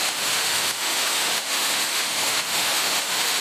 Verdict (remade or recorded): remade